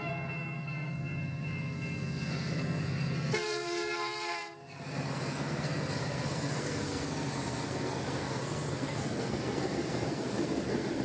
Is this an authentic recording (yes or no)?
no